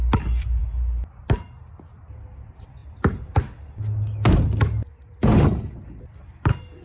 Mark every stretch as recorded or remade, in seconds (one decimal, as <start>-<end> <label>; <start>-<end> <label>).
0.0-0.6 remade; 0.6-1.2 recorded; 1.2-6.8 remade

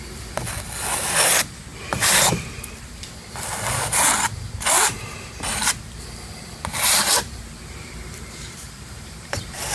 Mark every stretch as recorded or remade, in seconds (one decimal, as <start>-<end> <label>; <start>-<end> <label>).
0.0-1.7 recorded; 1.7-3.1 remade; 3.1-6.7 recorded; 6.7-9.7 remade